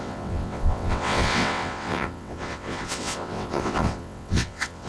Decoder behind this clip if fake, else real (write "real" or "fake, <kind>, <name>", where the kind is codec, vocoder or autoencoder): fake, vocoder, WaveNeXt